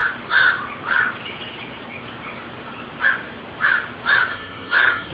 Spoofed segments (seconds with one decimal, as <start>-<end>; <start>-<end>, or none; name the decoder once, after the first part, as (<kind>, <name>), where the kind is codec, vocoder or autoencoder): 4.3-5.1 (codec, SNAC)